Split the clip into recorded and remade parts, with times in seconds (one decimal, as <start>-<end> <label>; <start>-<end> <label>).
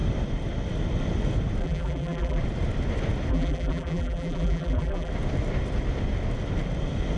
0.0-1.6 recorded; 1.6-2.4 remade; 2.4-3.3 recorded; 3.3-5.1 remade; 5.1-7.2 recorded